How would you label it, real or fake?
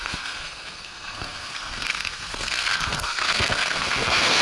fake